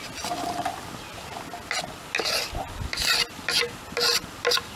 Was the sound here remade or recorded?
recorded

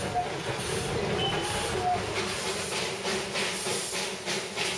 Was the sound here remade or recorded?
recorded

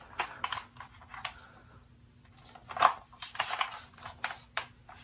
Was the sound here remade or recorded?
recorded